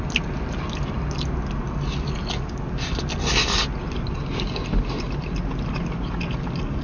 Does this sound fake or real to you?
real